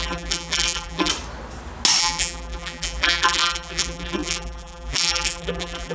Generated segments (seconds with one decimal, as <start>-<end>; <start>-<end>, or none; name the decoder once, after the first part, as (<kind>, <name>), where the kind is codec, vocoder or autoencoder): 0.0-1.1 (vocoder, BigVGAN v2); 2.0-5.9